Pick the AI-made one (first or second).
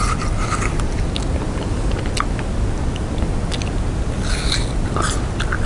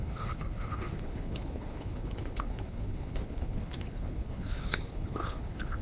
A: second